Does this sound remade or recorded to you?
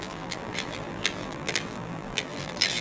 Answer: remade